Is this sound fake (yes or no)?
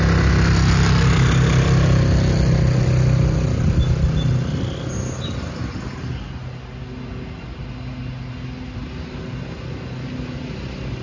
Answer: no